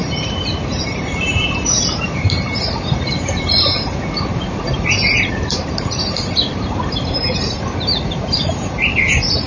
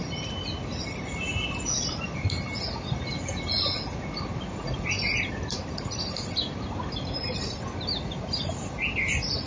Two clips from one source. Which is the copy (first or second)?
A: first